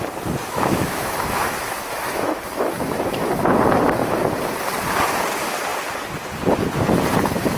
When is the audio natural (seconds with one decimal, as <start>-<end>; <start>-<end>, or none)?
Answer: 0.0-0.4; 3.3-7.6